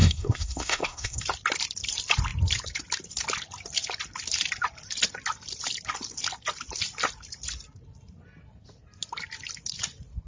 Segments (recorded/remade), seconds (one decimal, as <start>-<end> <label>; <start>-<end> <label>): 0.0-1.2 remade; 1.2-10.3 recorded